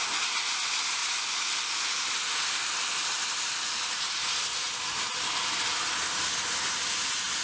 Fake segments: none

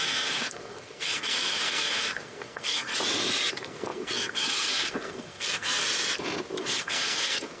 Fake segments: 0.0-2.9; 3.5-5.8; 6.6-7.6

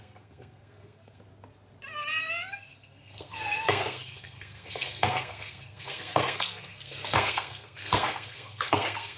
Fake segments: 0.0-1.3; 2.5-9.2

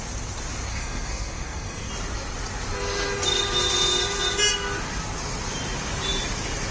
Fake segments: 0.7-1.9

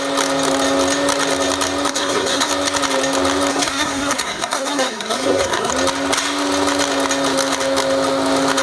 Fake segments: 1.9-2.5; 3.5-5.7

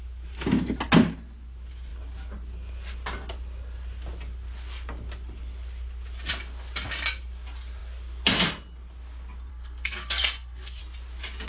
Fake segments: 9.5-10.8